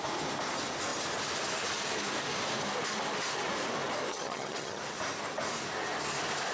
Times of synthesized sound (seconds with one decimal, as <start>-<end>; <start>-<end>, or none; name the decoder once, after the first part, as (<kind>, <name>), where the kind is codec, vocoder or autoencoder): 4.1-4.8 (vocoder, HiFi-GAN)

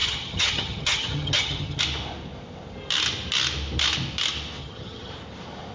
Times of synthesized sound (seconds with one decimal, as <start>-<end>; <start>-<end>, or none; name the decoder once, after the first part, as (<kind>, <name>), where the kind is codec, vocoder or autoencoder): 0.0-1.8 (vocoder, HiFi-GAN); 4.6-5.1

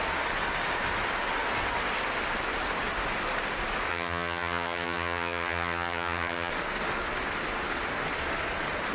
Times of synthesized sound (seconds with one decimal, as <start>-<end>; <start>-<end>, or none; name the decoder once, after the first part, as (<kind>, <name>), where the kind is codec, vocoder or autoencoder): 3.9-6.5 (vocoder, HiFi-GAN)

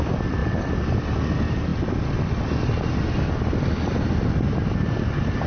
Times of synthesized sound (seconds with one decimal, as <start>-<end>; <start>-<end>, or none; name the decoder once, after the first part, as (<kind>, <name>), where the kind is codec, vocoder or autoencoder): none

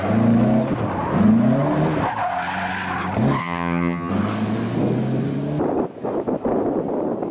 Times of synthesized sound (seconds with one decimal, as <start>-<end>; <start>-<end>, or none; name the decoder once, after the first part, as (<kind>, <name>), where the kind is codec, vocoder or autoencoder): 3.4-4.1 (vocoder, HiFi-GAN)

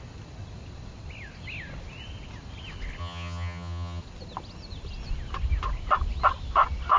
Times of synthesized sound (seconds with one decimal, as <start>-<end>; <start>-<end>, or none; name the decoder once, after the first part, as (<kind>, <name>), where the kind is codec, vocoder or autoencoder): 3.0-4.0 (vocoder, HiFi-GAN)